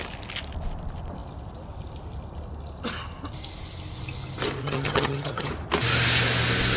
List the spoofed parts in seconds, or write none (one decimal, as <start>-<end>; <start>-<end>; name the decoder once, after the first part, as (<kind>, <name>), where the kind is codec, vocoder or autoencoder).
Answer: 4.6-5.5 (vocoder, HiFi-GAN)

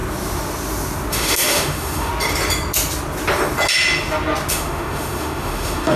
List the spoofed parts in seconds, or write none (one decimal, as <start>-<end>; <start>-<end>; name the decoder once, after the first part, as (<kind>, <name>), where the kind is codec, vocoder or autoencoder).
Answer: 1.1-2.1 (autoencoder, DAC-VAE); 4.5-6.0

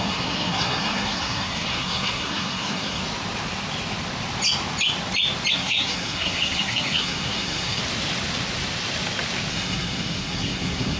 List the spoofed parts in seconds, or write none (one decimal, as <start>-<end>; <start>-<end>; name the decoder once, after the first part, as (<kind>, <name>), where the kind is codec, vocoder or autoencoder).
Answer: 0.0-3.0 (codec, SNAC); 5.5-7.8; 9.5-11.0

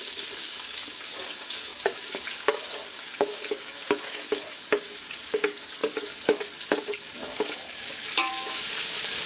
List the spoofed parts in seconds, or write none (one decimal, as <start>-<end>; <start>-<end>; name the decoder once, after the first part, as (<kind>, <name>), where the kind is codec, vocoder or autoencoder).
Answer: 0.0-9.3 (codec, DAC)